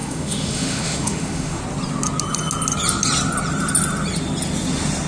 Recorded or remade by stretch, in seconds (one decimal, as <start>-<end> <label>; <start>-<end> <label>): 0.0-1.6 remade; 1.6-5.1 recorded